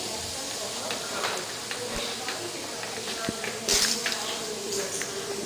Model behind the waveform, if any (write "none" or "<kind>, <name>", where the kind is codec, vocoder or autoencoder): none